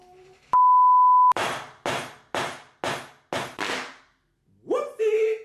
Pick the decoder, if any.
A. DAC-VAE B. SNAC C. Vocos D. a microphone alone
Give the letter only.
D